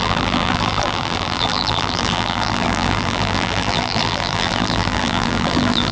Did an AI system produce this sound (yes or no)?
yes